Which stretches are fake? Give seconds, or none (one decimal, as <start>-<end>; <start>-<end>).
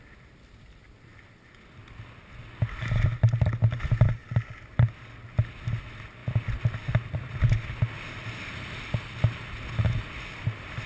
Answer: none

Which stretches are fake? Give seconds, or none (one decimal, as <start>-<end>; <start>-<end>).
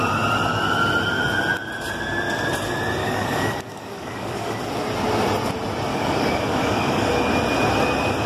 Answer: 3.0-4.6; 5.9-7.1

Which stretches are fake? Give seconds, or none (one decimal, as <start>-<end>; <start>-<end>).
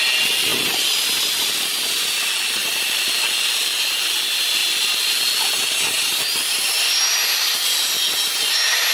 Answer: none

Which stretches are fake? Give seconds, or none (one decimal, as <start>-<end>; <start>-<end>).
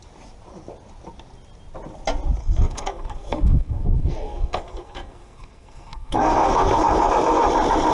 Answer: 2.4-7.1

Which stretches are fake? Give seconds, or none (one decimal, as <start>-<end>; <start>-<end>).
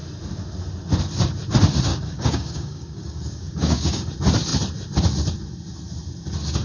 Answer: 1.9-4.1